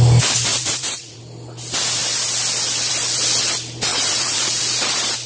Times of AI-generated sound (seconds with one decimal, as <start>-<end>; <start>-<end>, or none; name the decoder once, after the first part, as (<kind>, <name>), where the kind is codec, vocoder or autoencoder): 0.5-1.2 (vocoder, Vocos); 3.9-4.6

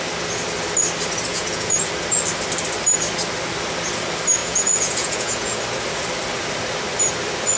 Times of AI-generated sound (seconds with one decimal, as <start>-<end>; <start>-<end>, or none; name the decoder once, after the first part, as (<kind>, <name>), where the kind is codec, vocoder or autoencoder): 1.3-1.8 (vocoder, Vocos); 4.4-5.6

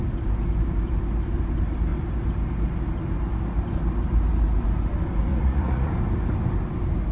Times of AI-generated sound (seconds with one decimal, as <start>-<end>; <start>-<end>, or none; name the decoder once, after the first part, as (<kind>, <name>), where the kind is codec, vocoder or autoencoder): 5.3-5.9 (vocoder, Vocos)

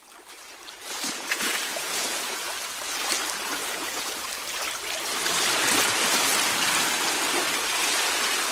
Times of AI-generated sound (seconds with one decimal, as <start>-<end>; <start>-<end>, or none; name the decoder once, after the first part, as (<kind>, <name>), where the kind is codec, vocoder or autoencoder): 0.8-2.4 (vocoder, Vocos); 3.6-4.3

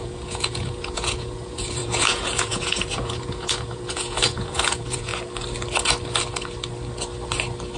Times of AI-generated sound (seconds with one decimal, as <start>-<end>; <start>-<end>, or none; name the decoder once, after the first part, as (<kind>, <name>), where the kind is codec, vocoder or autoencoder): 0.0-5.1 (vocoder, Vocos)